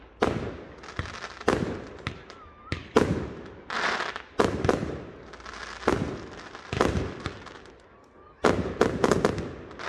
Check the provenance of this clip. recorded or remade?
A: recorded